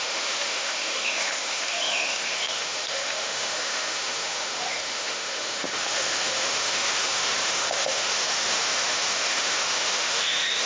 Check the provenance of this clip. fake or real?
fake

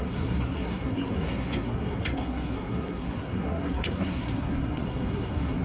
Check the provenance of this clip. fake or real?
fake